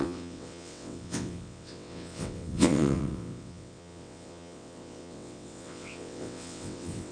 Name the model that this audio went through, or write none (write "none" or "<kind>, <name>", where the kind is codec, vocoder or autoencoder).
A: vocoder, WaveNeXt